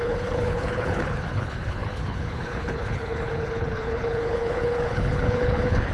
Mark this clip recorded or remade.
remade